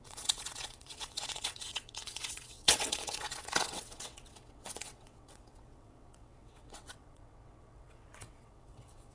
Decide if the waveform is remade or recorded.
remade